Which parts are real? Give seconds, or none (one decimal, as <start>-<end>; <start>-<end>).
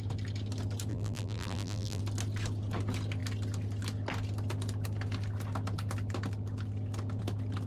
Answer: 0.0-0.9; 2.0-7.7